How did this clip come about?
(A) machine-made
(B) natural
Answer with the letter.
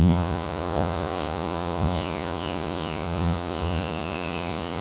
A